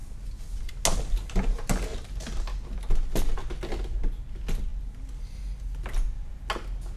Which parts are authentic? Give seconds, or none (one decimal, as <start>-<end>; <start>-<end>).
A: 0.0-7.0